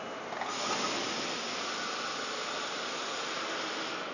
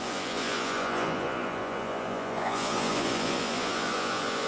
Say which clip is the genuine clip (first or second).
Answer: first